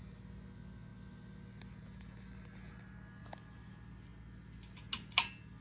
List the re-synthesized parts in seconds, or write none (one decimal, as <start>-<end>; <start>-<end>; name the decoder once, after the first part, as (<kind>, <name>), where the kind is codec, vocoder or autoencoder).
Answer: none